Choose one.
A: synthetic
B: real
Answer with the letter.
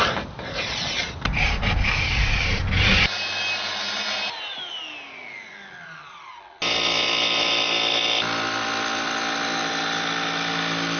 B